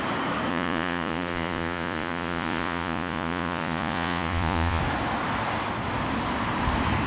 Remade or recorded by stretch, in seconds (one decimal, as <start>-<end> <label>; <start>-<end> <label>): 0.0-0.5 recorded; 0.5-4.8 remade; 4.8-7.1 recorded